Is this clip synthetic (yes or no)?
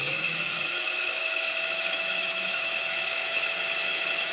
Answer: yes